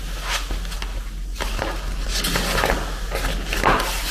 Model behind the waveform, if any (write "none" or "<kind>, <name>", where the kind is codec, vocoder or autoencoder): none